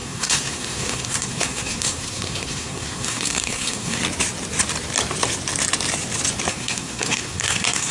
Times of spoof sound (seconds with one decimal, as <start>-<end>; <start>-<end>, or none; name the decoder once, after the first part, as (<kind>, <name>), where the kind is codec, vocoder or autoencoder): 0.0-4.0 (codec, SNAC); 6.5-7.9